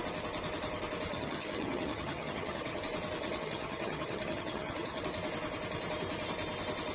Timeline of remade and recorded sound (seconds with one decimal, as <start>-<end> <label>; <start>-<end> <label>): 0.0-1.1 recorded; 1.1-2.8 remade; 2.8-3.2 recorded; 3.2-5.0 remade; 5.0-6.9 recorded